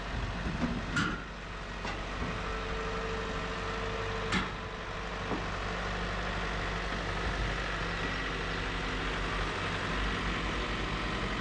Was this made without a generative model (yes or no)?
yes